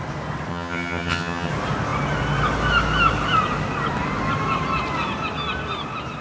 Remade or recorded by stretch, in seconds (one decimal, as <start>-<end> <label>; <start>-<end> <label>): 0.0-0.5 recorded; 0.5-1.5 remade; 1.5-6.2 recorded